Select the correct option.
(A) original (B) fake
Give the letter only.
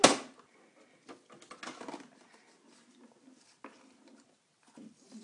A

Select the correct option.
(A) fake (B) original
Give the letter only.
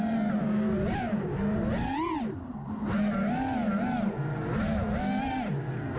B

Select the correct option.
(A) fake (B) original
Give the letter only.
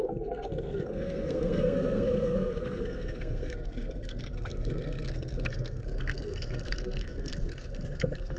A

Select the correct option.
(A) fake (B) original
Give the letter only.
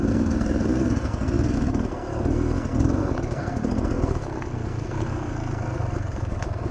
A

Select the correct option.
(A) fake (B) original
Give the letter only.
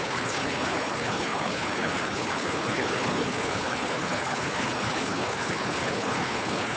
A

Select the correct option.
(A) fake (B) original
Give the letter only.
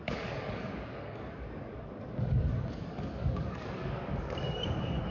A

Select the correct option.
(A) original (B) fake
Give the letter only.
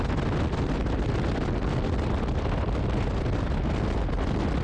A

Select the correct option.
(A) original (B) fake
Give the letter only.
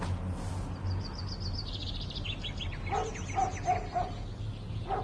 A